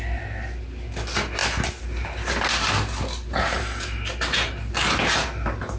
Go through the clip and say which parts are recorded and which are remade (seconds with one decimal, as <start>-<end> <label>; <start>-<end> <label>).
0.0-5.8 recorded